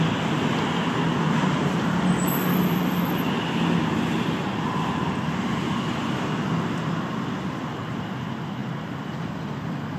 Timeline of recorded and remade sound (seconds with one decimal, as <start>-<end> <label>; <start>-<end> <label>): 0.0-1.6 recorded; 1.6-3.3 remade; 3.3-10.0 recorded